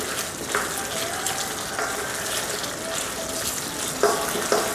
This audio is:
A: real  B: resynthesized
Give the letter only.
A